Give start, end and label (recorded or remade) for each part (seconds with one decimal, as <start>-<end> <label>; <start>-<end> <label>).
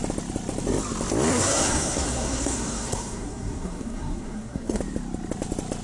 0.0-1.3 recorded; 1.3-4.8 remade; 4.8-5.8 recorded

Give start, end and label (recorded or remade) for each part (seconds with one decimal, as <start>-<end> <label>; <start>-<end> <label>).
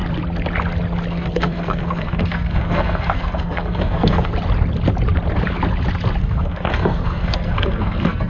0.0-1.1 recorded; 1.1-4.3 remade; 4.3-6.2 recorded; 6.2-8.3 remade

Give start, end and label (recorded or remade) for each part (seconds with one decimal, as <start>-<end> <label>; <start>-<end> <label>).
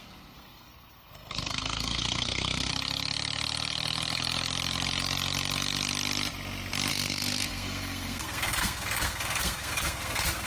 0.0-2.7 remade; 2.7-6.9 recorded; 6.9-10.5 remade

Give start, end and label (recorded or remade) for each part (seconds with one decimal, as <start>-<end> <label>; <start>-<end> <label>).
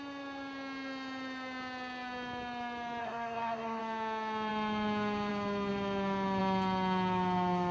0.0-3.0 recorded; 3.0-3.8 remade; 3.8-7.7 recorded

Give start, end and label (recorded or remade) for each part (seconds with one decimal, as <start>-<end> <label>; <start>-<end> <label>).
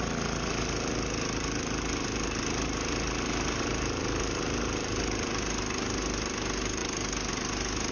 0.0-7.9 recorded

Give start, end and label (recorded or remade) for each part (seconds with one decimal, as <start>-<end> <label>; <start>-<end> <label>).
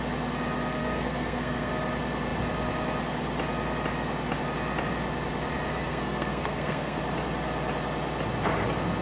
0.0-0.8 recorded; 0.8-1.7 remade; 1.7-5.7 recorded; 5.7-7.0 remade; 7.0-9.0 recorded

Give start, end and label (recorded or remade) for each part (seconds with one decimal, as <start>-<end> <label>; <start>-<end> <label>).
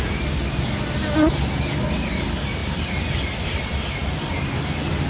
0.0-5.1 recorded